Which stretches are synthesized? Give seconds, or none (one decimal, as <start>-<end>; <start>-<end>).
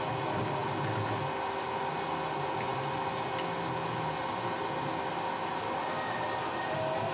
none